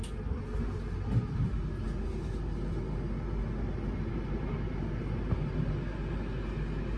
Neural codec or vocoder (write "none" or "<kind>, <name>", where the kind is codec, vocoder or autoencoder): none